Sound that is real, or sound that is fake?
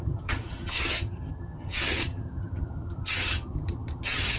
fake